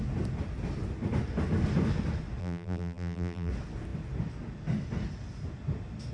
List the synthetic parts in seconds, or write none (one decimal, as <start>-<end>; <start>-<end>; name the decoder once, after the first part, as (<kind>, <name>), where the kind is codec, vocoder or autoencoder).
2.4-3.5 (vocoder, BigVGAN v2)